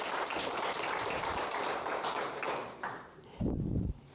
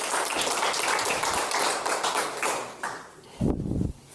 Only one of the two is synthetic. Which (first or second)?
first